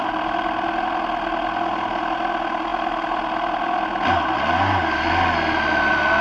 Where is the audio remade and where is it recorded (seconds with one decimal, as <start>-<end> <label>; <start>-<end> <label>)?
0.0-6.2 recorded